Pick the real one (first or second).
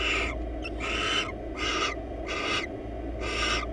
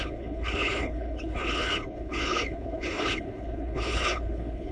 first